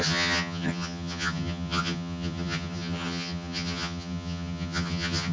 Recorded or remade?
remade